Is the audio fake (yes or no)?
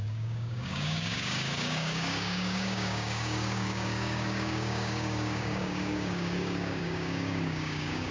yes